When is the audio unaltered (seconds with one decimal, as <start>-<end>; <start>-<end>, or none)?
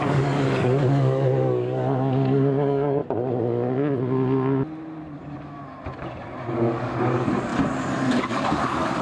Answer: 3.0-6.5; 7.5-8.1